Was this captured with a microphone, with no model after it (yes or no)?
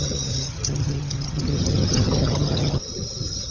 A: no